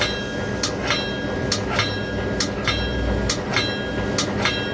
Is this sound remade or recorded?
recorded